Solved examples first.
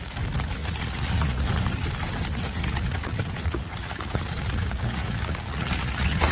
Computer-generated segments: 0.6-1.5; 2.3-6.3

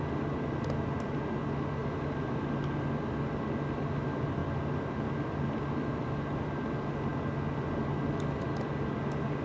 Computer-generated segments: none

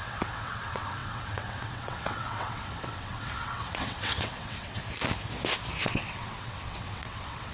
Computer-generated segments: 0.0-4.8; 5.8-7.5

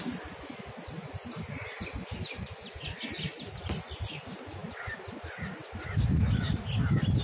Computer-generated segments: none

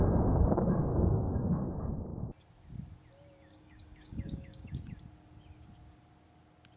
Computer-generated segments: 0.9-1.7; 3.5-4.7